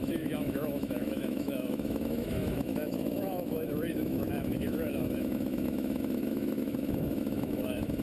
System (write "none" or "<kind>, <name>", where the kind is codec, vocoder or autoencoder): autoencoder, DAC-VAE